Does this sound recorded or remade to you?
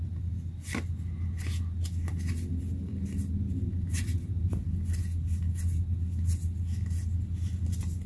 recorded